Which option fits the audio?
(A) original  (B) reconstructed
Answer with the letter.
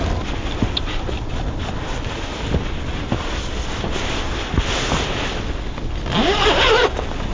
A